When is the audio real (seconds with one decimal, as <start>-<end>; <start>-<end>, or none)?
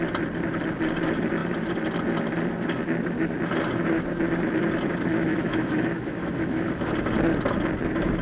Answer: 0.0-5.1; 6.9-8.2